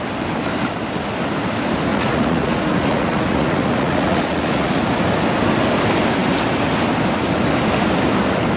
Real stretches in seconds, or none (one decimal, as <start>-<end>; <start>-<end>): 0.0-1.9; 4.8-8.6